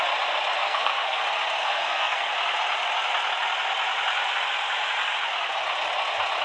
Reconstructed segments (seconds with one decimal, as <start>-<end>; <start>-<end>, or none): 0.6-1.2; 1.6-2.3